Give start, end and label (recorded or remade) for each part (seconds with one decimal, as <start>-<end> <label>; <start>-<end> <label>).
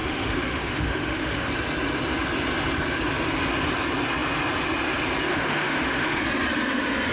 0.0-1.5 remade; 1.5-5.3 recorded; 5.3-6.2 remade; 6.2-7.1 recorded